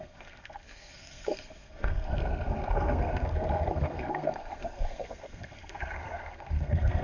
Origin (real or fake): fake